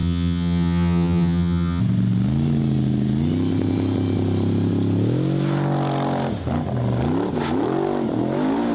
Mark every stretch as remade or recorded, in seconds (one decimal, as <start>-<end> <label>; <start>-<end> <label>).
0.0-1.8 remade; 1.8-8.7 recorded